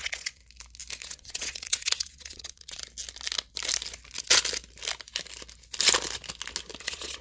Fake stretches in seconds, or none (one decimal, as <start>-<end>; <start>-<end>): 0.0-0.4; 1.0-2.8; 6.8-7.2